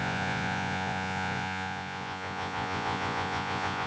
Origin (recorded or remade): remade